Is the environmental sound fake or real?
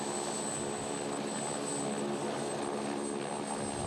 real